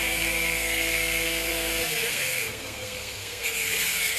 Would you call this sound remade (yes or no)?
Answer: yes